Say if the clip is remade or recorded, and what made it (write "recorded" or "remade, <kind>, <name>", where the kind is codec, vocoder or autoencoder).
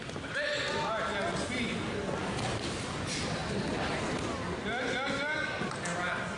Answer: recorded